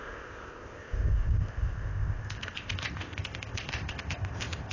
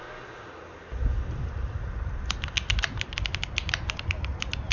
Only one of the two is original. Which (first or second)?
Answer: second